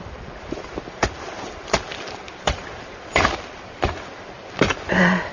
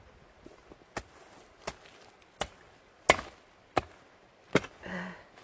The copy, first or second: first